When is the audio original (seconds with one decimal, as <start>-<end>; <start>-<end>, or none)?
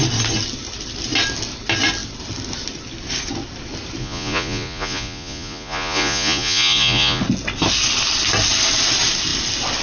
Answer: 0.0-4.0; 7.2-9.8